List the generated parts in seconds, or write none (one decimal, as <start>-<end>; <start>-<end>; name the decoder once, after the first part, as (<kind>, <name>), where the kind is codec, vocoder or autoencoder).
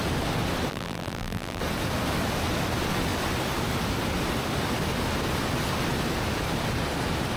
0.7-1.6 (vocoder, BigVGAN v2)